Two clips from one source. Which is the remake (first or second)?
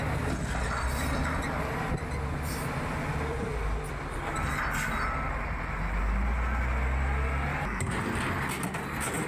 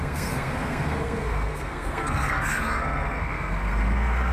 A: second